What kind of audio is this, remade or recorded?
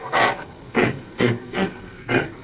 remade